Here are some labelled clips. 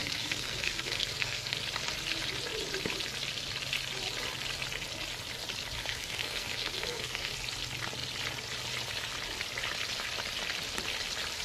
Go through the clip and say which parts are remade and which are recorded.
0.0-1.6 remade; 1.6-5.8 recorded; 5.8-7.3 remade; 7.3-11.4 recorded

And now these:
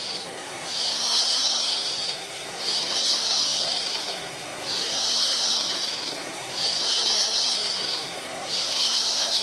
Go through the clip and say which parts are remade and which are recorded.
0.0-9.4 remade